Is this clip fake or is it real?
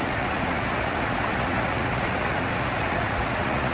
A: fake